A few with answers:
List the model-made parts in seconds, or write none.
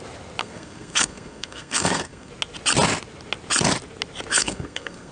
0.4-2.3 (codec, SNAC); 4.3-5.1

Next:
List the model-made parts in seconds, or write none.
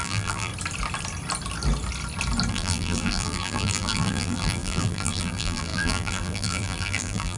0.0-0.5 (vocoder, BigVGAN v2); 2.5-7.4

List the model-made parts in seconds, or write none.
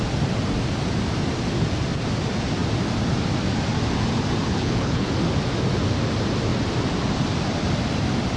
4.5-5.1 (codec, HILCodec)